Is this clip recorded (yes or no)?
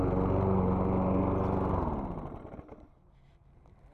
yes